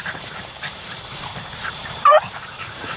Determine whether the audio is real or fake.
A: fake